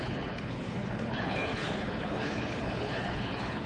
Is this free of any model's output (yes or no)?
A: no